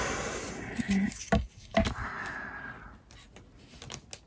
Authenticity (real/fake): real